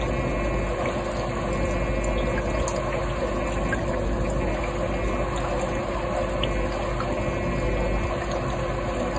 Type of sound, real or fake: real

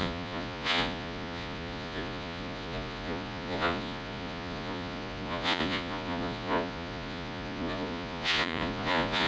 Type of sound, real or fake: fake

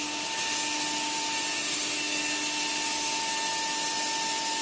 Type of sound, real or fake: real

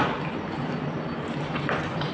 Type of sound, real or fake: real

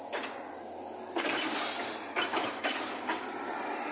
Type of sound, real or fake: real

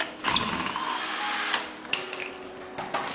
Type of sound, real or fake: real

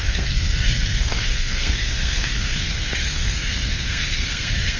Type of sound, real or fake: fake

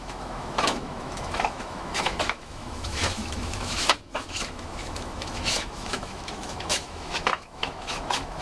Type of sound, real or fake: fake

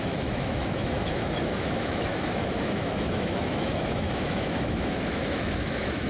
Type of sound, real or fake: fake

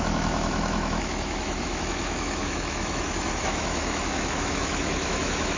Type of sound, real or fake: fake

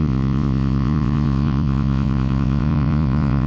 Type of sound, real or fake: fake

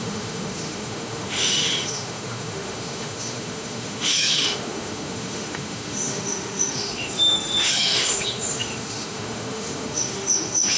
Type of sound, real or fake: fake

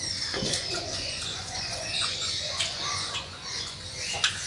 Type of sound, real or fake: fake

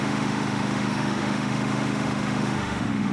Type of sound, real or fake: fake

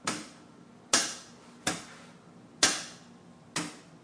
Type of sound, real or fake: real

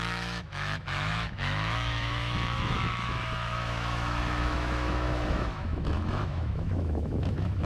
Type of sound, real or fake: fake